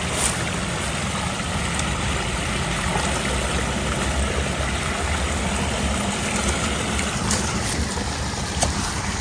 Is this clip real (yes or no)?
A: yes